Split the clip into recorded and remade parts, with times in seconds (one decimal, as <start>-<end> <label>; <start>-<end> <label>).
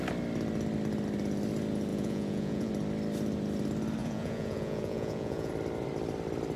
0.0-1.9 recorded; 1.9-2.7 remade; 2.7-4.0 recorded; 4.0-5.5 remade; 5.5-6.6 recorded